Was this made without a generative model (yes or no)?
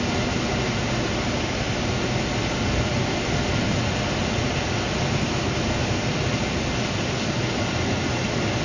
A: yes